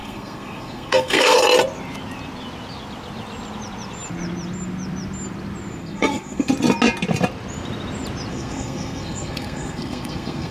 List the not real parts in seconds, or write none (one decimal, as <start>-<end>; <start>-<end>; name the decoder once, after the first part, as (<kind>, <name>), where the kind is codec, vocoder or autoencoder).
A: 0.0-1.4 (codec, SNAC); 5.8-6.5; 8.3-10.5